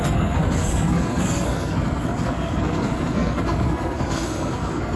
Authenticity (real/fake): fake